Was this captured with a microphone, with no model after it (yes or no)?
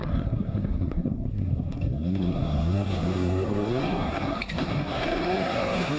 no